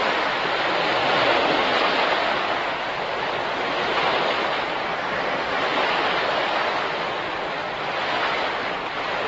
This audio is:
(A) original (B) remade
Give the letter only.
A